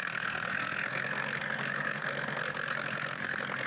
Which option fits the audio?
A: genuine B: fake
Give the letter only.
B